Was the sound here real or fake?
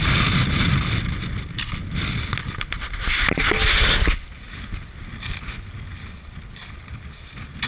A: real